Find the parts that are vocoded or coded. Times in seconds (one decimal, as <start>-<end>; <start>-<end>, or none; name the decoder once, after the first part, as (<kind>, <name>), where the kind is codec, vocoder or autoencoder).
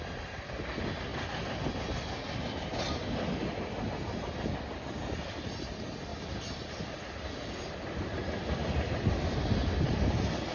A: 6.1-6.8 (vocoder, BigVGAN v2)